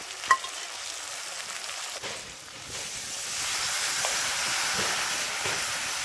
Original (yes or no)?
yes